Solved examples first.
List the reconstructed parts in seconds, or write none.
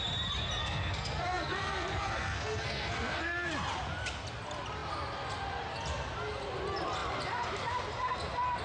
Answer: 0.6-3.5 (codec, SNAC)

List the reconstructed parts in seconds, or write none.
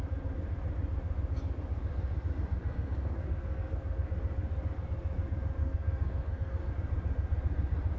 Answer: 2.6-4.1 (codec, SNAC); 5.6-6.7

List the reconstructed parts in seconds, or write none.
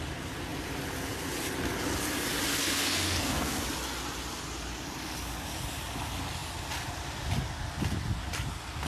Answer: 2.5-3.6 (codec, SNAC)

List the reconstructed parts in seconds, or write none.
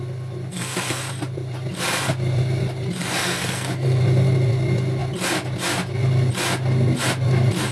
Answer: 0.5-1.0 (codec, SNAC); 3.0-4.0